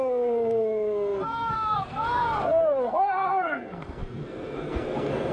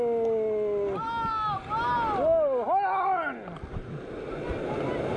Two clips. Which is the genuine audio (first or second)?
second